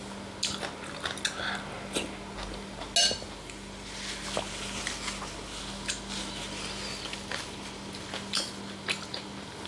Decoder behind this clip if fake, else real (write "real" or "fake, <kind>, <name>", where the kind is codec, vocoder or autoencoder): real